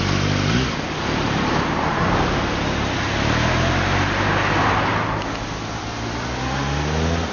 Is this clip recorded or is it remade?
recorded